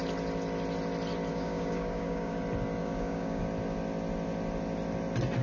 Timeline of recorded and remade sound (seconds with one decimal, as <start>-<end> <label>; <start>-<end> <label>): 0.0-1.3 recorded; 1.3-2.4 remade; 2.4-2.8 recorded; 2.8-3.4 remade; 3.4-5.4 recorded